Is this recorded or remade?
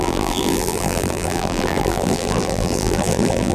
remade